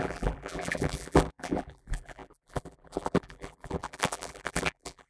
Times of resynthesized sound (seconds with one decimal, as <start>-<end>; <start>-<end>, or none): 0.0-5.1